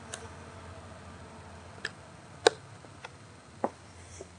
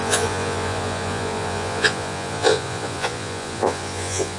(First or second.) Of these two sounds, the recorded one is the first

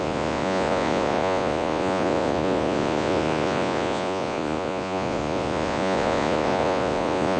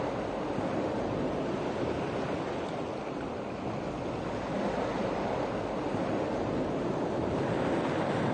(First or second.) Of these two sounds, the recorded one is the second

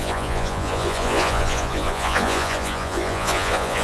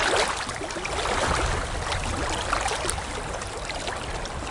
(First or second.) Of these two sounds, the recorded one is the second